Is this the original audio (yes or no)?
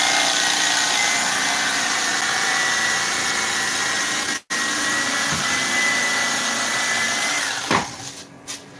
yes